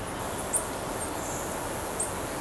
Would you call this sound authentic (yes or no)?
yes